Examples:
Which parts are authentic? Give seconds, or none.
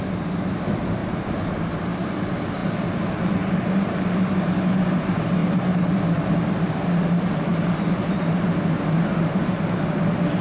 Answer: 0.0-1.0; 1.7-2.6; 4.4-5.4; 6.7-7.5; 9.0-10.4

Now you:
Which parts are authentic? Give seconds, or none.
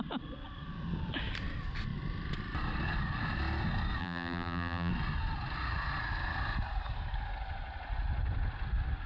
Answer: 0.0-4.0; 4.9-9.1